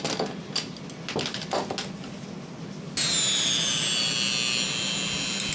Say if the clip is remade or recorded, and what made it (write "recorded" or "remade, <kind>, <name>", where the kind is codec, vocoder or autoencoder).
recorded